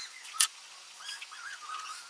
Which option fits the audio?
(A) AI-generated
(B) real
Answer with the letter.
A